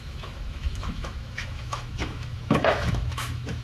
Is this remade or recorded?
remade